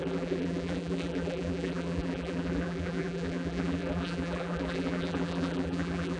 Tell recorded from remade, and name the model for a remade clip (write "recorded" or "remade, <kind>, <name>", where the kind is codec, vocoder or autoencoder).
remade, vocoder, BigVGAN v2